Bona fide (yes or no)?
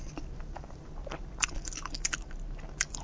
yes